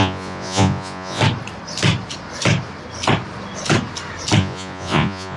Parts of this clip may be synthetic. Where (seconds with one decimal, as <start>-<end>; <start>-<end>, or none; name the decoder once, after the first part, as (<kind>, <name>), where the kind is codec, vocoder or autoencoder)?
0.0-1.2 (vocoder, Vocos); 4.4-5.4